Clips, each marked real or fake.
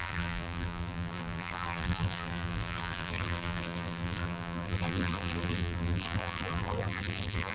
fake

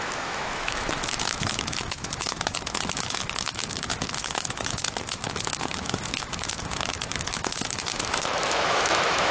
fake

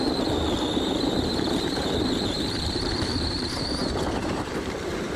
fake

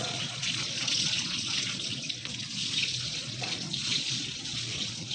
fake